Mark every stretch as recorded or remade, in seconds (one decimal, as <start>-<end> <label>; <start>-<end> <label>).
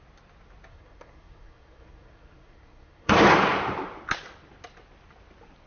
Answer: 0.0-0.7 recorded; 0.7-3.2 remade; 3.2-5.7 recorded